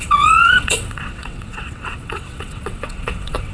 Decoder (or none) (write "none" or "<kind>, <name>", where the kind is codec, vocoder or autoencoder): vocoder, WaveNeXt